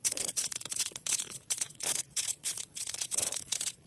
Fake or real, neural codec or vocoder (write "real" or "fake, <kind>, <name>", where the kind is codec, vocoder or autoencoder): fake, vocoder, Vocos